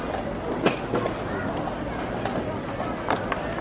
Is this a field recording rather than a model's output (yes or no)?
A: yes